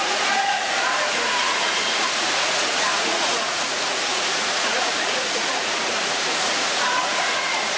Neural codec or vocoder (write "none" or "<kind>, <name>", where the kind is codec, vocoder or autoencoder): vocoder, Vocos